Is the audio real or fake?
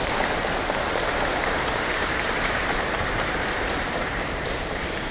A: fake